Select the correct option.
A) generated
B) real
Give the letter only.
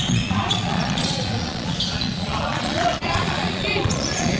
A